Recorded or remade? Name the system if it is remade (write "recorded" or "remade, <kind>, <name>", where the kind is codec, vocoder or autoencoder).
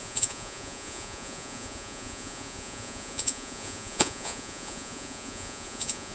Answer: remade, vocoder, Vocos